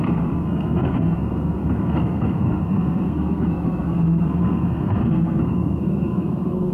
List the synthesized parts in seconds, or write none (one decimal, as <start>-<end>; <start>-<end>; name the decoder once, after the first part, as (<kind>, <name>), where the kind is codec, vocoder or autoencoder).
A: 0.0-6.7 (codec, SNAC)